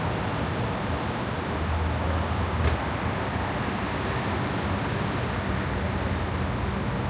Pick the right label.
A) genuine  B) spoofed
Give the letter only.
A